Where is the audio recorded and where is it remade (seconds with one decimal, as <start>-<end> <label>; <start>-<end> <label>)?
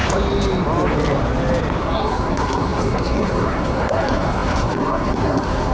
0.0-1.8 recorded; 1.8-5.7 remade